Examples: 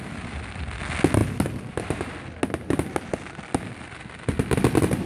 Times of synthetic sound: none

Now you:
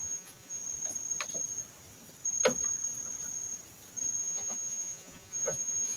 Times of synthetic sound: 0.0-0.6 (vocoder, Vocos); 4.2-6.0

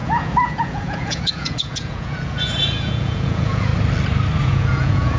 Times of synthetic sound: 0.0-3.7 (vocoder, Vocos); 4.4-5.2

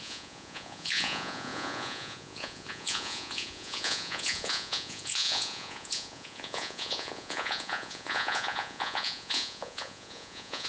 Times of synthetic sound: 0.0-10.7 (vocoder, Vocos)

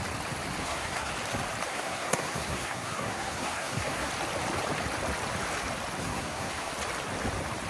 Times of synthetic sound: 0.6-1.1 (codec, SNAC); 1.7-4.1; 6.0-6.7

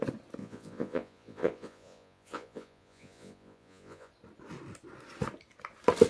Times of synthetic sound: 0.4-4.1 (vocoder, Vocos)

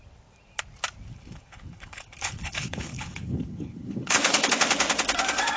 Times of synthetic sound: 1.1-4.5 (codec, HILCodec)